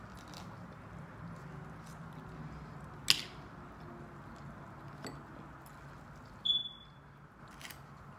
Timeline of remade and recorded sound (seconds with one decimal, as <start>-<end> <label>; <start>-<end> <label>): 0.0-8.2 recorded